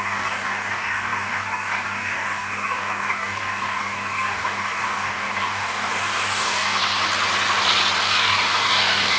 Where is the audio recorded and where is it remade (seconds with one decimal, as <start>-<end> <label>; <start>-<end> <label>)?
0.0-6.8 remade; 6.8-8.0 recorded; 8.0-9.2 remade